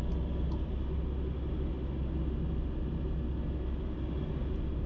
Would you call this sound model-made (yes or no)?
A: no